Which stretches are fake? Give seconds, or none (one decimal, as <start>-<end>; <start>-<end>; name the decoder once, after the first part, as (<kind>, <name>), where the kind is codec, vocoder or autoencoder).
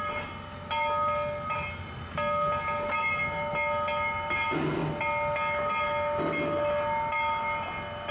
none